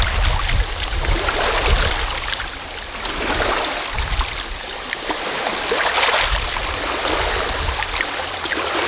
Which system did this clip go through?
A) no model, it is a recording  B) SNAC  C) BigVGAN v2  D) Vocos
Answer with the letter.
A